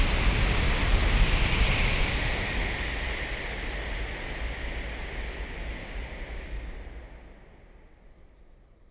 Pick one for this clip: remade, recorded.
recorded